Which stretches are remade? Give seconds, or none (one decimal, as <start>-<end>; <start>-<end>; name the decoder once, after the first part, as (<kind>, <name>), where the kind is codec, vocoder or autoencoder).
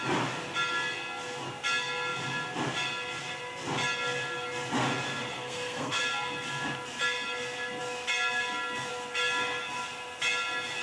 5.3-6.0 (codec, SNAC)